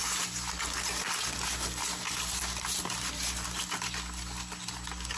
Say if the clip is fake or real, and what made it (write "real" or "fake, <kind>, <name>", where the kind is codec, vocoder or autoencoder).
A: real